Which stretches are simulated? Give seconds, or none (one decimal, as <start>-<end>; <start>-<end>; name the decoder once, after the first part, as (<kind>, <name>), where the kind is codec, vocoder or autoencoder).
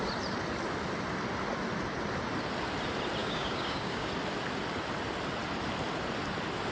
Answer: 3.2-4.1 (codec, DAC)